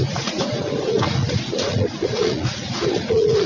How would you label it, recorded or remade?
remade